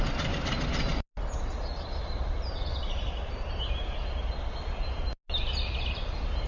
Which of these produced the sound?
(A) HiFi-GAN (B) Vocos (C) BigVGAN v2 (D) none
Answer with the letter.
D